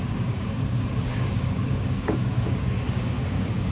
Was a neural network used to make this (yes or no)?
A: yes